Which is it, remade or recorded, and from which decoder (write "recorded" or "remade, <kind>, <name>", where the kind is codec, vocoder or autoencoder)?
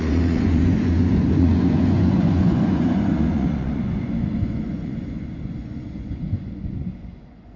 remade, vocoder, Vocos